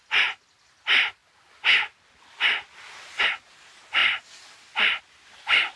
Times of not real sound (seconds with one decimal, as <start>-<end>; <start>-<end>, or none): none